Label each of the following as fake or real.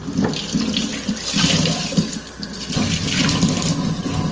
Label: real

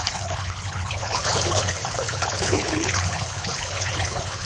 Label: fake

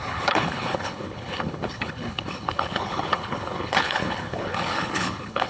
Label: fake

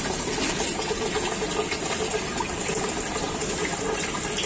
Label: real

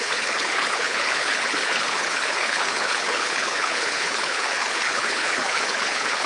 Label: fake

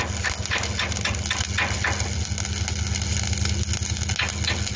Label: real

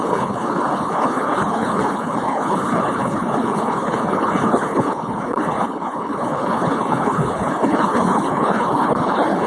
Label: fake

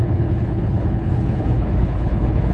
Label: fake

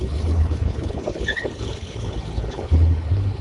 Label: fake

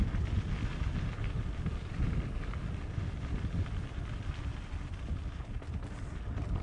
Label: real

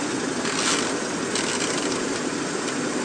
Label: real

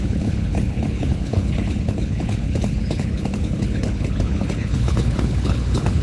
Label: fake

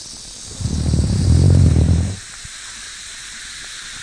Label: real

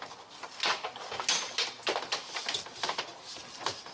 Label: real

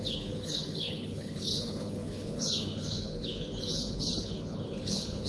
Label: fake